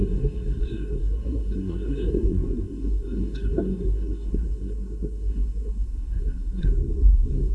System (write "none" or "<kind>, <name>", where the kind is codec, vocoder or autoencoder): codec, SNAC